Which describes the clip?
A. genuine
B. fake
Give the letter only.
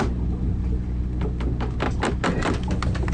A